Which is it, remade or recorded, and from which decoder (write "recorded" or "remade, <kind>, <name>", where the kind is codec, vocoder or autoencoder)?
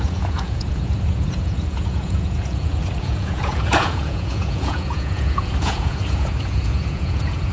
remade, vocoder, Vocos